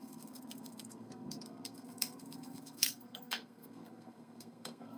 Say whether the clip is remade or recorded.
remade